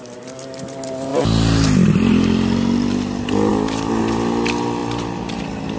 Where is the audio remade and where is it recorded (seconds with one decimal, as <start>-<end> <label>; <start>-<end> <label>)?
0.0-5.8 recorded